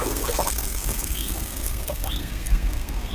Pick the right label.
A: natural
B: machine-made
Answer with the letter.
B